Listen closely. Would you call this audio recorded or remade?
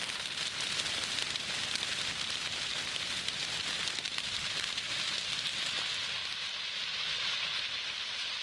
remade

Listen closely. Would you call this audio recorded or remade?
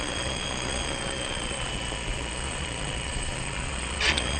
remade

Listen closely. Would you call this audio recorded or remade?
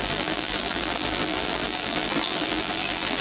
remade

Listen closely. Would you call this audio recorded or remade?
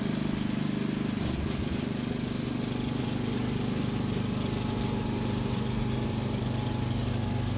recorded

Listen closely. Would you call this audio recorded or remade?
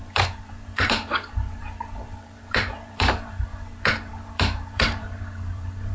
remade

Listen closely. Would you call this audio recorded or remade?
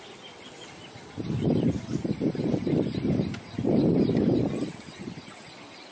recorded